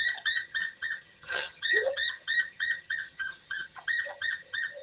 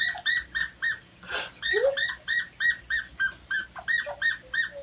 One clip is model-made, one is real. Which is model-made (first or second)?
first